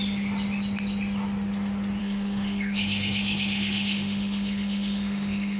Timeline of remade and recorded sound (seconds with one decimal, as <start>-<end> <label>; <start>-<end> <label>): 0.0-2.0 recorded; 2.0-5.6 remade